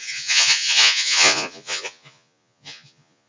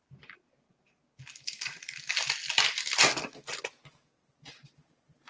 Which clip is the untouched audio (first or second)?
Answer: second